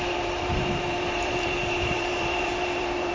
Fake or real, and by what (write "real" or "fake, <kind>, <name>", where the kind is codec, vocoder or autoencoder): fake, vocoder, BigVGAN v2